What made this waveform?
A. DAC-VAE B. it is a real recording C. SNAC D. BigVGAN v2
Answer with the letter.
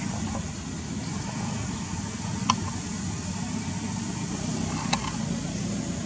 B